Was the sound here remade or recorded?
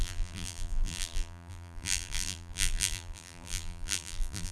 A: remade